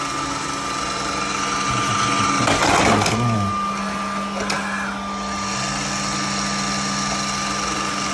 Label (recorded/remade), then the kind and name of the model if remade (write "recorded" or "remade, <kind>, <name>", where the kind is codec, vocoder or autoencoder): recorded